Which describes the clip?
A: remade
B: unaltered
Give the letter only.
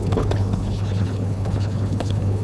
A